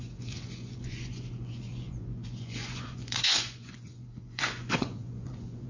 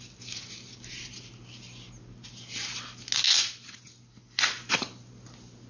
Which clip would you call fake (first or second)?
first